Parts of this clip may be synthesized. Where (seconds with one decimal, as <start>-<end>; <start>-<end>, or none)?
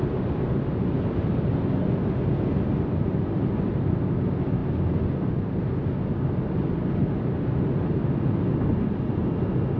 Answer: none